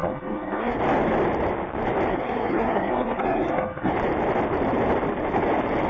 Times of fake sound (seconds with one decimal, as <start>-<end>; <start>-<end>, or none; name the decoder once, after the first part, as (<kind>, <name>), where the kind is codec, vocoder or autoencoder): 0.0-0.8 (codec, SNAC); 2.1-3.9